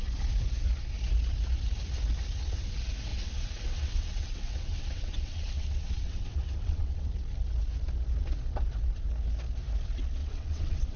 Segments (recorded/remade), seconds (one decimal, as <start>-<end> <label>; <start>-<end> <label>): 0.0-3.1 recorded; 3.1-7.1 remade; 7.1-10.2 recorded; 10.2-11.0 remade